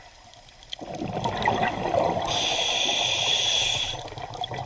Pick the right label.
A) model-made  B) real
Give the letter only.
B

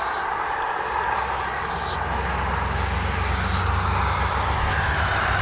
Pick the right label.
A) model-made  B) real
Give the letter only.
B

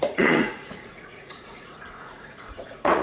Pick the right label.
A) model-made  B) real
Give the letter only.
A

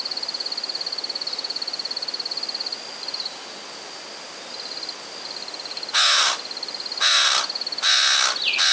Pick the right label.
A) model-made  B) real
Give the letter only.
B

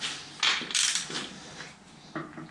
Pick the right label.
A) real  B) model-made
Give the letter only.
A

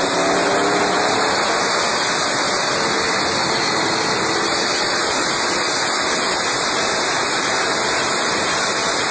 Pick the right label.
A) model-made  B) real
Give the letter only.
B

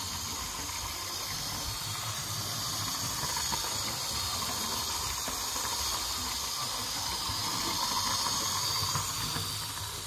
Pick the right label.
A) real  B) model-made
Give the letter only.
A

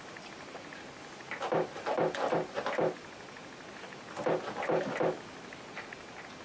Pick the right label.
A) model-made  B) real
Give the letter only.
B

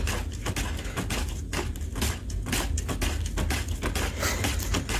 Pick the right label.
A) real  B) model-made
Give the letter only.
A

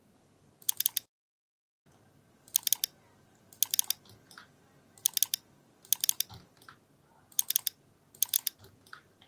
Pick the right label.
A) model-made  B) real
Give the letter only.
B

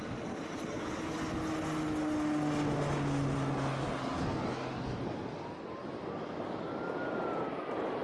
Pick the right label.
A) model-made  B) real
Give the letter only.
B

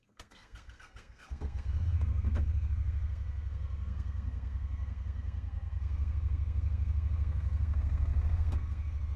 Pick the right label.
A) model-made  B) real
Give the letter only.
A